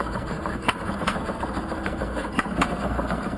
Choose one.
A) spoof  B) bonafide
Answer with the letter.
A